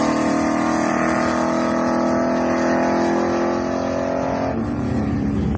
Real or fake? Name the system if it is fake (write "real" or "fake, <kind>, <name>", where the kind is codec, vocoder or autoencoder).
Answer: real